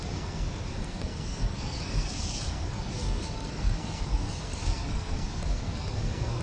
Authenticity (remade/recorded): remade